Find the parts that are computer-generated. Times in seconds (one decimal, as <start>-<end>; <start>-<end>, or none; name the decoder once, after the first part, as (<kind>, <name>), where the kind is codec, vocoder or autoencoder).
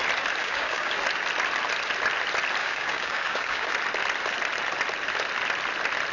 0.4-0.9 (codec, DAC); 2.6-3.7